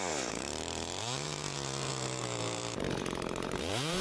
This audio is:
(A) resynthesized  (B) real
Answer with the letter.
A